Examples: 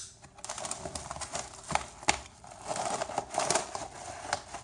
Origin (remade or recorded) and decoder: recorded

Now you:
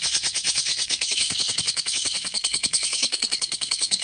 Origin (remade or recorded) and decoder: remade, codec, SNAC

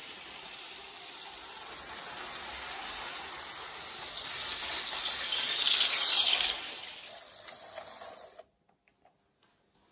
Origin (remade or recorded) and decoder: recorded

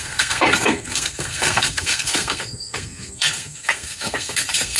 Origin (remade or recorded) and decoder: remade, codec, SNAC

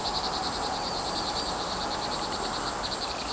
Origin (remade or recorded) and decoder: recorded